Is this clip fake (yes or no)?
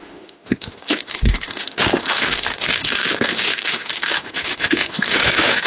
yes